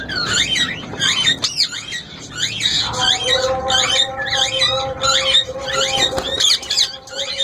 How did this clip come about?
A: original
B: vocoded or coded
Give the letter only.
A